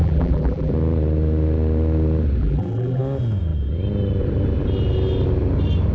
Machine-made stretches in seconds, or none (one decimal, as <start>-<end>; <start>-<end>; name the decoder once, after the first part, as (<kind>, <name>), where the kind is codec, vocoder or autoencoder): 0.0-0.7 (vocoder, BigVGAN v2); 2.4-3.0